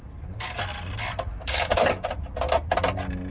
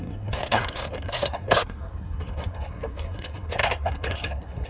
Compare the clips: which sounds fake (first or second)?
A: second